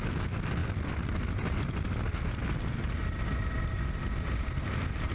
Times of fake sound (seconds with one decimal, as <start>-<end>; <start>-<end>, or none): none